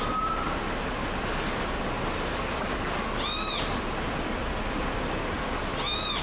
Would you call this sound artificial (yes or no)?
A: no